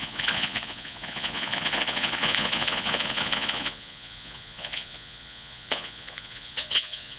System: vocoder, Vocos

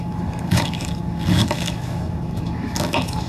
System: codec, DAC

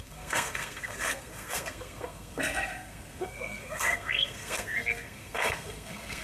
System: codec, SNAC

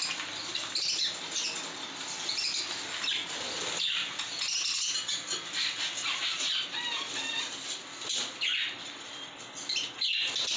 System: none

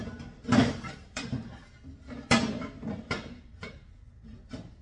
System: vocoder, BigVGAN v2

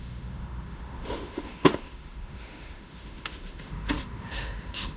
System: autoencoder, DAC-VAE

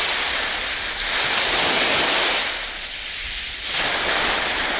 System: none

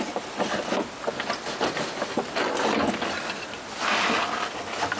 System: none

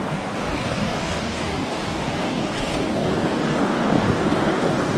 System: codec, DAC